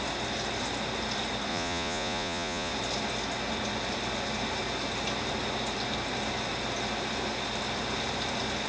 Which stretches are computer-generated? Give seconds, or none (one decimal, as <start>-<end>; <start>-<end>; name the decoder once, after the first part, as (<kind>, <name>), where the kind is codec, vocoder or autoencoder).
1.5-2.7 (vocoder, Vocos)